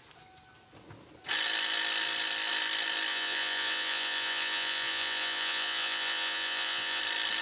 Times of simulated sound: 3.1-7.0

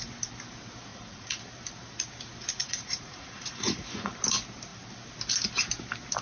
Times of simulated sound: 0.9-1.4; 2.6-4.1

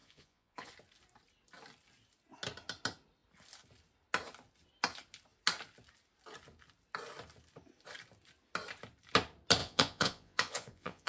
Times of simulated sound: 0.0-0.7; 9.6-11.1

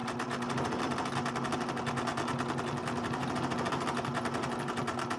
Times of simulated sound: none